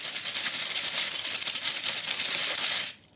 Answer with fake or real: real